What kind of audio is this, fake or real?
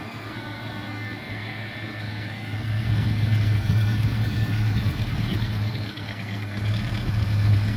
fake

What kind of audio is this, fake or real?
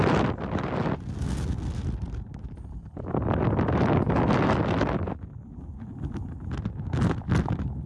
real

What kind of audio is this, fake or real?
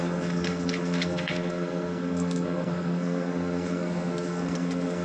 fake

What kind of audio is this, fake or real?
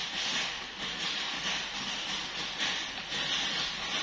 real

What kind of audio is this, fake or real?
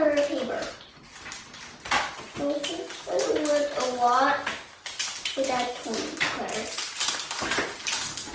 real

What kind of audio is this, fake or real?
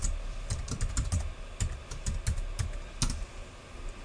real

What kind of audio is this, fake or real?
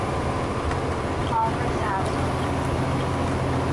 real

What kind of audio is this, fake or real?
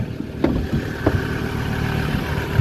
real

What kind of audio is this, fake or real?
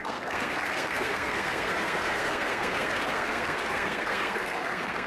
fake